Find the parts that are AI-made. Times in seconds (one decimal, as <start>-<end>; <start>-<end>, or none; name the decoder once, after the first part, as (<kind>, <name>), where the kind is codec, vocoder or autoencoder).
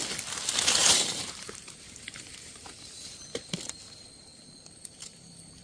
0.8-3.2 (vocoder, BigVGAN v2)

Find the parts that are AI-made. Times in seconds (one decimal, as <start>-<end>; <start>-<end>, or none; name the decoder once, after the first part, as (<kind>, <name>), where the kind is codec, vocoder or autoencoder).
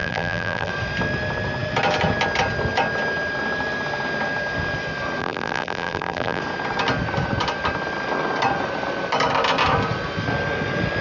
0.0-0.7 (vocoder, BigVGAN v2); 5.2-6.4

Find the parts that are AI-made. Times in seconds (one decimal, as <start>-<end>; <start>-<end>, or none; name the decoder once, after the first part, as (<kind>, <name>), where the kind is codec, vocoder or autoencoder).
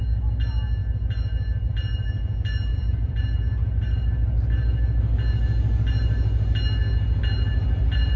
2.7-3.4 (vocoder, BigVGAN v2)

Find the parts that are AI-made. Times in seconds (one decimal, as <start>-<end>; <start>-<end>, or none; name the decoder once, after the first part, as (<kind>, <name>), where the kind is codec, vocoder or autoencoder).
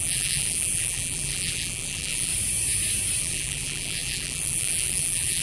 0.0-2.3 (vocoder, BigVGAN v2); 3.2-5.4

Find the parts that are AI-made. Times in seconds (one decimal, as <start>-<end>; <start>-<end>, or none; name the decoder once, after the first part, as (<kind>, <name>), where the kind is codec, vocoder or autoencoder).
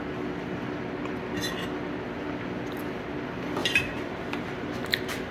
3.6-4.4 (vocoder, BigVGAN v2)